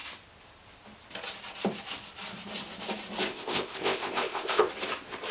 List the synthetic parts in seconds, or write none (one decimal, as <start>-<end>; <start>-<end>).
3.3-4.7